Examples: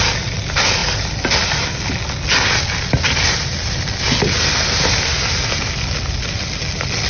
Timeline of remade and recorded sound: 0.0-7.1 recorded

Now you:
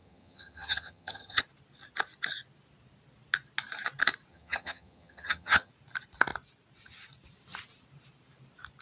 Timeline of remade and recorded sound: 0.0-1.4 remade; 1.4-4.3 recorded; 4.3-5.7 remade; 5.7-8.8 recorded

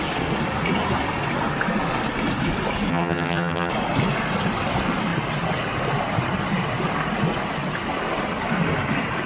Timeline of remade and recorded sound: 0.0-2.9 recorded; 2.9-3.7 remade; 3.7-9.3 recorded